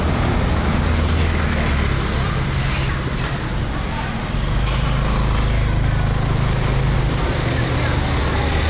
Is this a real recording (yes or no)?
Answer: yes